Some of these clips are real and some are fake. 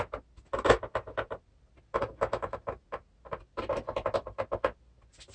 real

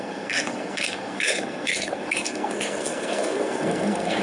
fake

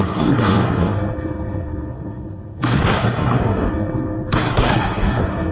fake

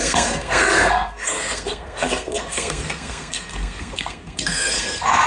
fake